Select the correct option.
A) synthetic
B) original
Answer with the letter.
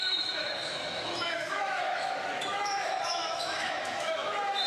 A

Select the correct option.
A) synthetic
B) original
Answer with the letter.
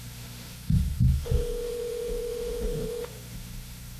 A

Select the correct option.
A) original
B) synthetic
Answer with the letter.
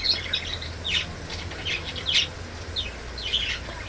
A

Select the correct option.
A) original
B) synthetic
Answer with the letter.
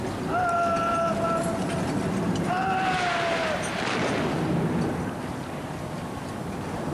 A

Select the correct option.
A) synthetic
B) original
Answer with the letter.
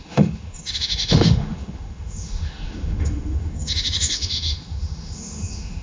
A